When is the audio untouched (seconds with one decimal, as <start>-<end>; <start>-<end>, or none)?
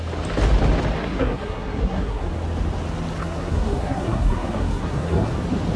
0.0-1.0; 2.3-3.2; 5.3-5.8